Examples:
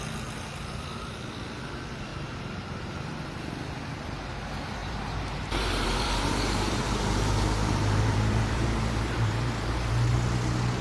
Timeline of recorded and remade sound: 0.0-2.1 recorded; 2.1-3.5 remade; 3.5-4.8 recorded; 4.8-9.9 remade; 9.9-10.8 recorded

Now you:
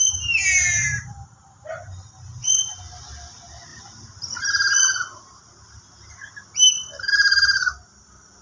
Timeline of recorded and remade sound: 0.0-0.8 recorded; 0.8-2.8 remade; 2.8-8.4 recorded

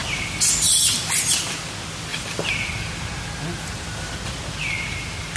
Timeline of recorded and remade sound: 0.0-2.1 recorded; 2.1-2.7 remade; 2.7-3.6 recorded; 3.6-4.1 remade; 4.1-5.4 recorded

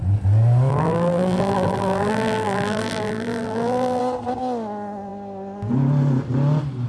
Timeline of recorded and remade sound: 0.0-0.7 recorded; 0.7-4.0 remade; 4.0-6.9 recorded

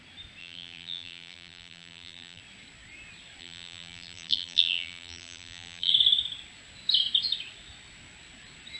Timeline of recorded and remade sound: 0.0-0.4 recorded; 0.4-2.4 remade; 2.4-3.4 recorded; 3.4-5.9 remade; 5.9-8.8 recorded

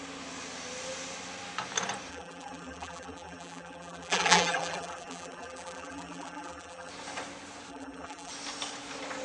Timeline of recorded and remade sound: 0.0-2.1 recorded; 2.1-6.9 remade; 6.9-7.7 recorded; 7.7-8.3 remade; 8.3-9.2 recorded

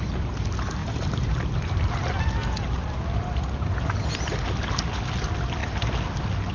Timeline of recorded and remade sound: 0.0-6.5 recorded